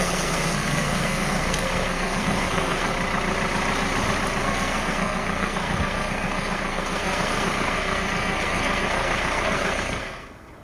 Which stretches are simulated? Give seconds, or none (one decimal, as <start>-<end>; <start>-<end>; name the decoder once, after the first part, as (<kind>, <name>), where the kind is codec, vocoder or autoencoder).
0.0-2.9 (codec, SNAC); 4.4-10.6